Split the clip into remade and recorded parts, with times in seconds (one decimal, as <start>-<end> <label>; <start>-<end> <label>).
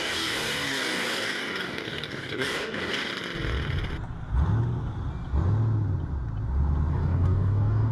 0.0-3.1 remade; 3.1-6.9 recorded; 6.9-7.9 remade